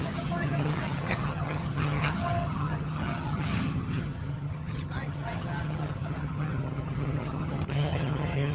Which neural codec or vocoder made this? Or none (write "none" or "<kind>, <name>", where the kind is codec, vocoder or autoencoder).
vocoder, HiFi-GAN